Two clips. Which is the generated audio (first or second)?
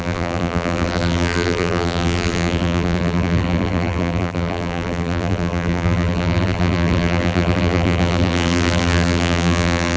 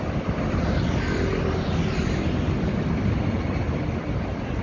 first